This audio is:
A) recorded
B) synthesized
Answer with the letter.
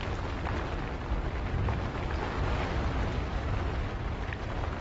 A